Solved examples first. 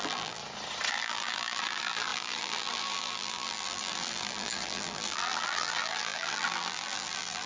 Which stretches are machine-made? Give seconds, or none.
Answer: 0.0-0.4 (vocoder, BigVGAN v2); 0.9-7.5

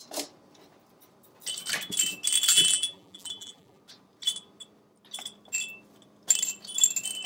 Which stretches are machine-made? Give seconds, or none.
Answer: 2.5-3.8 (vocoder, BigVGAN v2)

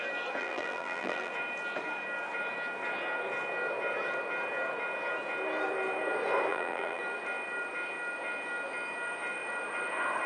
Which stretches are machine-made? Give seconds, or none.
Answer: 0.4-1.3 (vocoder, BigVGAN v2); 6.5-7.0

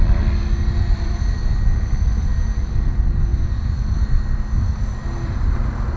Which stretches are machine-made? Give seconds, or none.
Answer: 0.4-2.7 (vocoder, BigVGAN v2); 3.3-5.6